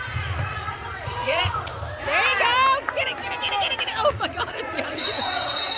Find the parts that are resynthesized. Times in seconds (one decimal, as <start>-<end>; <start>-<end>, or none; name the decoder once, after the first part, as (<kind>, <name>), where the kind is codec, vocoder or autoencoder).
0.0-1.7 (vocoder, Vocos); 4.1-5.8